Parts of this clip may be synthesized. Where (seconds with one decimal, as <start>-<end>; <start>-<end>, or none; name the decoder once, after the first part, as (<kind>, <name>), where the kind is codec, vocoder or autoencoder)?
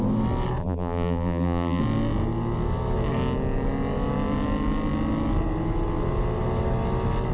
0.6-1.8 (vocoder, BigVGAN v2)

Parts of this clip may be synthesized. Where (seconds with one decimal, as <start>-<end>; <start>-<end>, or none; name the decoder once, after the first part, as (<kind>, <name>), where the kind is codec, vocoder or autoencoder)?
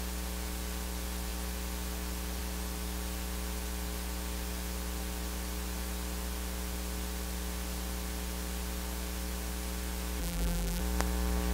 10.2-10.8 (vocoder, BigVGAN v2)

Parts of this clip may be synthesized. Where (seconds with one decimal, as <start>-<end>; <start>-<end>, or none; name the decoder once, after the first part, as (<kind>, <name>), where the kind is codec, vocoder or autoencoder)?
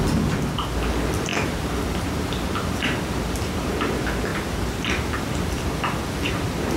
1.3-2.1 (vocoder, BigVGAN v2); 4.3-5.7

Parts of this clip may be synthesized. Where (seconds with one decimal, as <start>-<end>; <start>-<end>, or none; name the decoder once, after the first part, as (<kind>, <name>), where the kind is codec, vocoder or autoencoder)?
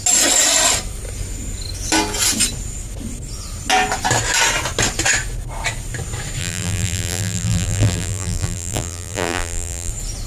6.4-9.9 (vocoder, BigVGAN v2)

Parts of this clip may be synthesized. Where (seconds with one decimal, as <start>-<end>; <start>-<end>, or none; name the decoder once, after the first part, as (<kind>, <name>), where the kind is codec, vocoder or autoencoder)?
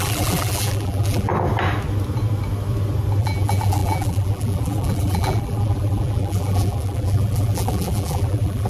0.0-1.3 (vocoder, BigVGAN v2); 3.2-8.7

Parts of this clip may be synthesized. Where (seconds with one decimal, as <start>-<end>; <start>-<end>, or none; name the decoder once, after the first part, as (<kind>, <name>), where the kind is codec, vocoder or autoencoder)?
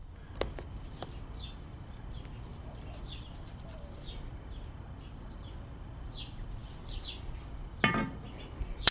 none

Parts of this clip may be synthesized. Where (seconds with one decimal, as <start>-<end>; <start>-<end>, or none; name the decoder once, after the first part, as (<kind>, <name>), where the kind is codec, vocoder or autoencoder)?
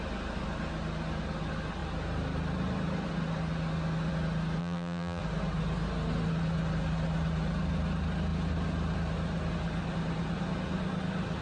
4.6-5.2 (vocoder, BigVGAN v2)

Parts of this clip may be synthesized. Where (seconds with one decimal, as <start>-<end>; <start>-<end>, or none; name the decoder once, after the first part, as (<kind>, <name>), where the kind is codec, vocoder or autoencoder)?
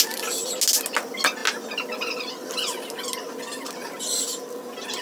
none